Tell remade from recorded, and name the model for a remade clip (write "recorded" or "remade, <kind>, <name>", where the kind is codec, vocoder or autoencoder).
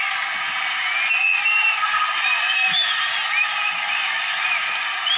recorded